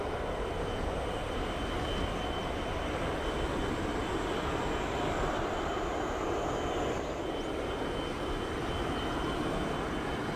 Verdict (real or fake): real